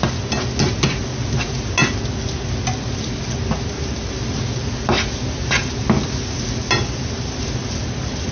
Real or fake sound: real